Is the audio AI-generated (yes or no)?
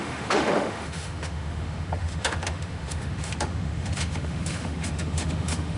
yes